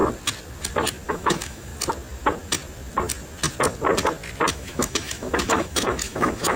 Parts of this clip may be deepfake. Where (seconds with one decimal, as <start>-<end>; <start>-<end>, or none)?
1.1-1.7; 4.5-6.6